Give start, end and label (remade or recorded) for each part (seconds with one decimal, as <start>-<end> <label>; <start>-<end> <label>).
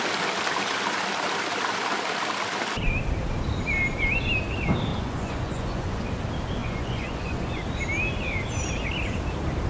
0.0-4.9 recorded; 4.9-6.0 remade; 6.0-6.6 recorded; 6.6-7.6 remade; 7.6-9.7 recorded